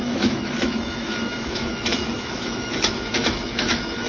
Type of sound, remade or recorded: remade